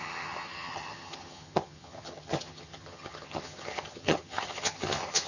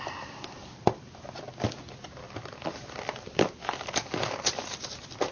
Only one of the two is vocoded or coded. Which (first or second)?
first